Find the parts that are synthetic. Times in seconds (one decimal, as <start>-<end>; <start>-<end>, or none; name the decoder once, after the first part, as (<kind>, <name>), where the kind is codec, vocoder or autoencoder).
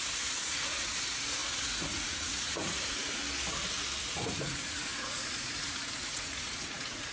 0.0-3.2 (vocoder, Vocos); 4.0-7.1